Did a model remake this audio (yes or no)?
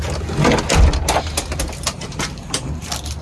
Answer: no